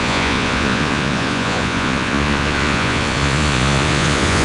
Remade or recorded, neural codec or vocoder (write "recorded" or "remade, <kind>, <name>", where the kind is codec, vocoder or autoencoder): remade, vocoder, Vocos